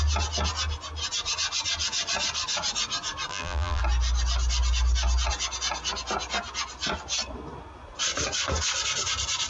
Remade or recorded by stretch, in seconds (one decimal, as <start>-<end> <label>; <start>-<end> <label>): 0.0-3.3 recorded; 3.3-3.8 remade; 3.8-9.5 recorded